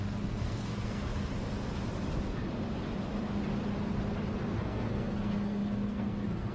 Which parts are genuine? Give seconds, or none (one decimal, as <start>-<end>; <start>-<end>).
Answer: 1.1-4.5